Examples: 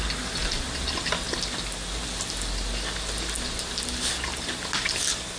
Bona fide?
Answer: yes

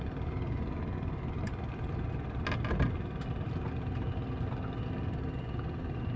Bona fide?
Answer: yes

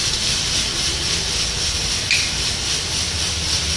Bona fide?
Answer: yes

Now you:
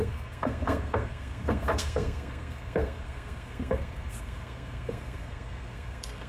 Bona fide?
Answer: no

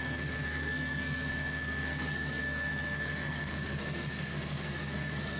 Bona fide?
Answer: no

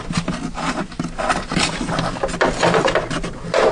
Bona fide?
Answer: yes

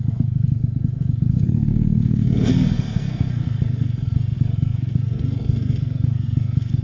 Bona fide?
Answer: no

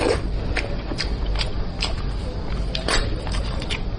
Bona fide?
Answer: yes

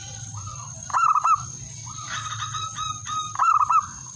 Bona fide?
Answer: yes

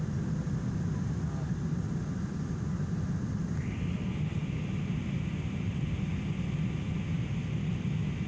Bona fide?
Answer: yes